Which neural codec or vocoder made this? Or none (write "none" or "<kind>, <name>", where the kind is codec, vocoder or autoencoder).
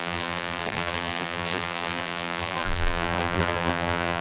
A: vocoder, BigVGAN v2